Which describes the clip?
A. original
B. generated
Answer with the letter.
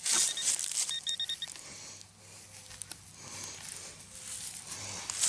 A